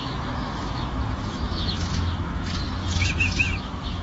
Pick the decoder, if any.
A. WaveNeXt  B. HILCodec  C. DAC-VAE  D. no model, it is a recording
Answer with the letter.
C